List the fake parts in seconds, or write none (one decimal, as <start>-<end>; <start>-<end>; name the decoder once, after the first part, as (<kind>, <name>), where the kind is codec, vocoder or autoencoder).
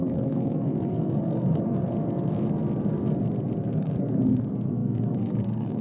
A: 0.0-1.8 (codec, SNAC); 3.6-5.8